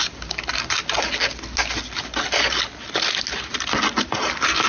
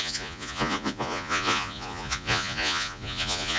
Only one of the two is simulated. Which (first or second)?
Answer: second